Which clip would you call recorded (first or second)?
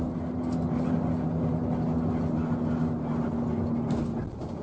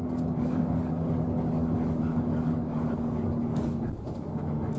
first